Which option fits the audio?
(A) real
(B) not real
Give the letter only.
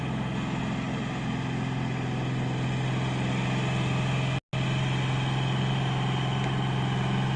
A